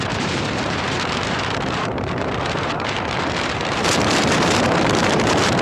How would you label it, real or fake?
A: fake